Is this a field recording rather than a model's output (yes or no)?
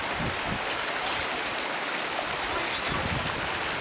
yes